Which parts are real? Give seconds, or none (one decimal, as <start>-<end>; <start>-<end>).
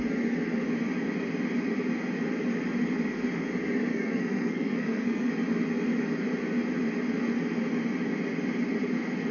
0.0-3.9; 5.3-9.3